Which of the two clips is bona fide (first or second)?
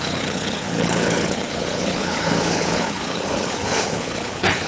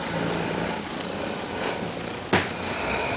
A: second